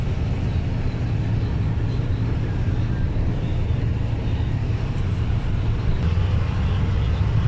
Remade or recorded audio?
recorded